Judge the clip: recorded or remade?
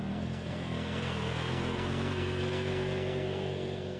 remade